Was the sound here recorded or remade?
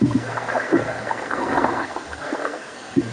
remade